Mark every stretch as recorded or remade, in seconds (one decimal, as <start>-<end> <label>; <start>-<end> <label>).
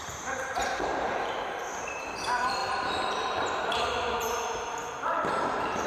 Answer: 0.0-5.9 remade